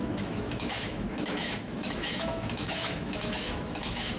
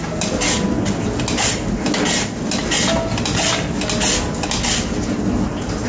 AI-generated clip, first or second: first